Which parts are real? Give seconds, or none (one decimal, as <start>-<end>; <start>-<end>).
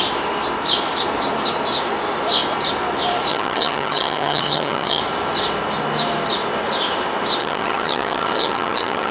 0.0-3.3; 5.0-7.4